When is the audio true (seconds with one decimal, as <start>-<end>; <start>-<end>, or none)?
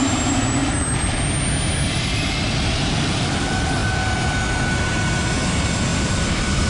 0.0-5.9